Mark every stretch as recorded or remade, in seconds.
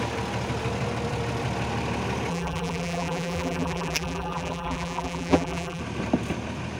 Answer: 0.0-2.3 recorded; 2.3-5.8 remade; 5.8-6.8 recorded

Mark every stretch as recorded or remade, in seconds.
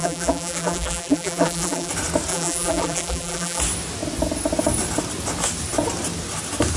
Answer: 0.0-1.9 remade; 1.9-2.3 recorded; 2.3-3.6 remade; 3.6-6.8 recorded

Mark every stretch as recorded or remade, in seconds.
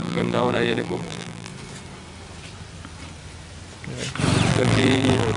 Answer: 0.0-1.5 remade; 1.5-4.5 recorded; 4.5-5.4 remade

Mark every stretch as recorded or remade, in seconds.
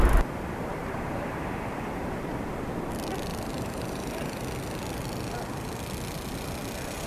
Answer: 0.0-0.7 recorded; 0.7-1.7 remade; 1.7-3.3 recorded; 3.3-4.4 remade; 4.4-7.1 recorded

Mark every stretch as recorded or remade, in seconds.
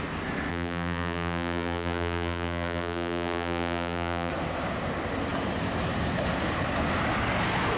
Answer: 0.0-0.5 recorded; 0.5-4.3 remade; 4.3-7.8 recorded